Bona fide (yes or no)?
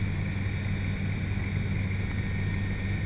yes